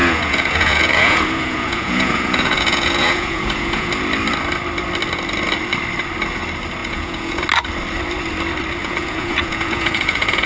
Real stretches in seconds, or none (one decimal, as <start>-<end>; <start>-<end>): 3.9-6.8; 7.4-8.8